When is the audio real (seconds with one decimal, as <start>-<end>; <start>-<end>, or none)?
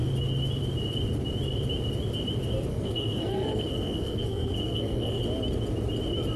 0.0-2.7; 5.2-6.4